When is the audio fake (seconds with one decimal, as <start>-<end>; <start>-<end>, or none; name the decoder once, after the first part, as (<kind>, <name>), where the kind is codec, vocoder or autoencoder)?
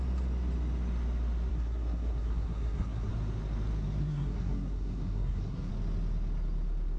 1.5-3.1 (codec, SNAC); 4.0-5.7